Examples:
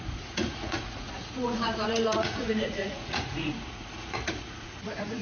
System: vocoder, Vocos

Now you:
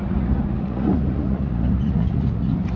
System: vocoder, Vocos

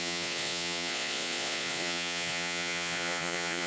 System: vocoder, Vocos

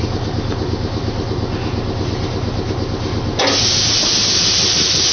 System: none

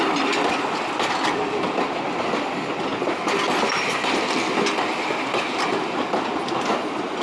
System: none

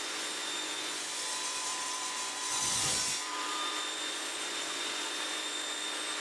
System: vocoder, Vocos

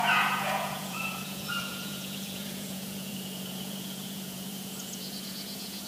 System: vocoder, Vocos